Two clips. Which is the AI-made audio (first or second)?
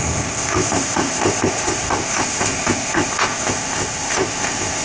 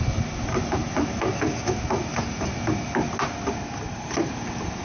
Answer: first